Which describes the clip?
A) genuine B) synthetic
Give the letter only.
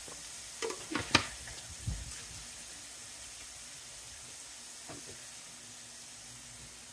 A